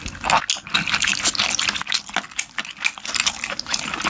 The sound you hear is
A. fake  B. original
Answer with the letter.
B